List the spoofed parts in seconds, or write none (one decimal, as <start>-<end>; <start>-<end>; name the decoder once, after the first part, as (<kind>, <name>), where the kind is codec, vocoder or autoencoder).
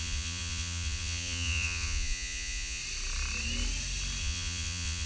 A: 0.0-2.8 (vocoder, Vocos); 4.2-5.1